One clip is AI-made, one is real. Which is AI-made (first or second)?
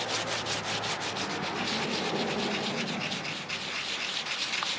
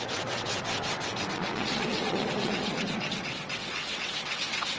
second